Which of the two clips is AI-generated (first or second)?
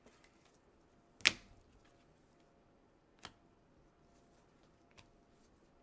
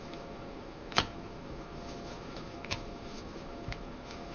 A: second